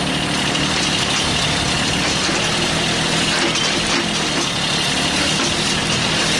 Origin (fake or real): real